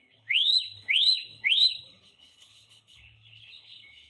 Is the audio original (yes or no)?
no